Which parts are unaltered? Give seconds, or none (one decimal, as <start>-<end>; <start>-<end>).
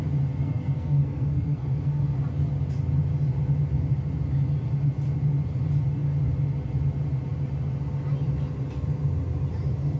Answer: 0.0-0.4; 2.2-10.0